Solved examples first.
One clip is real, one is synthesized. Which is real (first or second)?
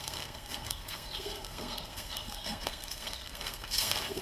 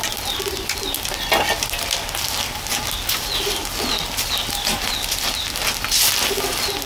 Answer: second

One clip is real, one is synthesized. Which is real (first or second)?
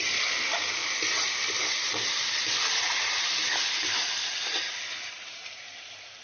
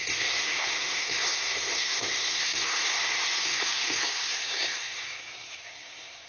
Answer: first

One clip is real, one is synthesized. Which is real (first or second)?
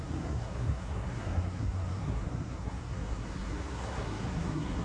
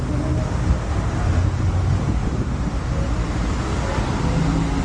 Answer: second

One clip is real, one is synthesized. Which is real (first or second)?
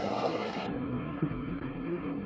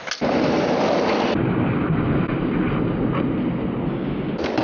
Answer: second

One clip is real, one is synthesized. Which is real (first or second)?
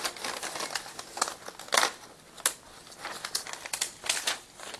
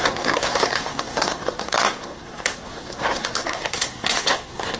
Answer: first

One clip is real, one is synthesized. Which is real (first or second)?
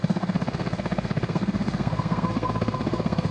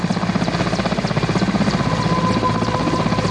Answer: second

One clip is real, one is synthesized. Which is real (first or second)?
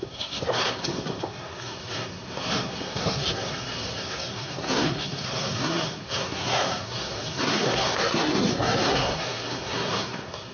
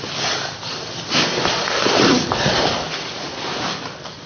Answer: second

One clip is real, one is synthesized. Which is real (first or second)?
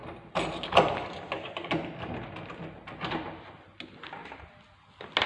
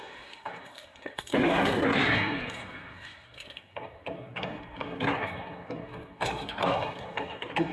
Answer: first